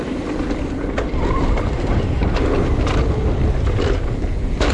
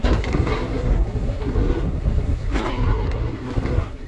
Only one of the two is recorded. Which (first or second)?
first